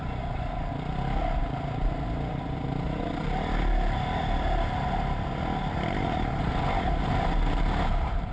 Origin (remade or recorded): recorded